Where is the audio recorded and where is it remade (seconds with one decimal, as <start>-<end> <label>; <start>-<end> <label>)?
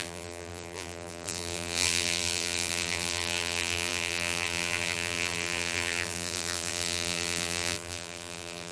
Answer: 0.0-8.7 remade